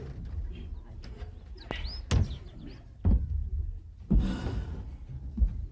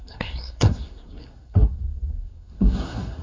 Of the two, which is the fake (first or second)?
second